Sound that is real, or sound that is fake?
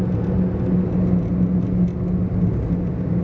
real